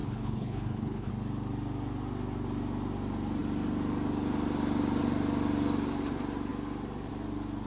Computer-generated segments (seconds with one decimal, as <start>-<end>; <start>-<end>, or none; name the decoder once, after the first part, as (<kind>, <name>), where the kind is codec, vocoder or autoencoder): 0.0-1.1 (codec, HILCodec)